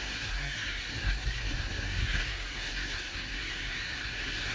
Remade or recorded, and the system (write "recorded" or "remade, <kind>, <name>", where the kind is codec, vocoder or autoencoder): remade, codec, SNAC